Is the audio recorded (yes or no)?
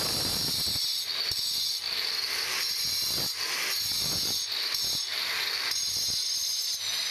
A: no